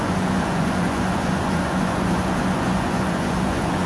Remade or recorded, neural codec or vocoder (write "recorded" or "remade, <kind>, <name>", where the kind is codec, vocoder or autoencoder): remade, vocoder, Vocos